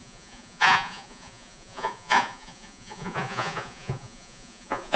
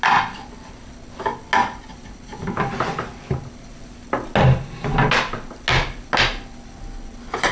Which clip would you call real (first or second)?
second